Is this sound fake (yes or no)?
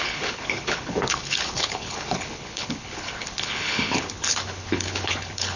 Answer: yes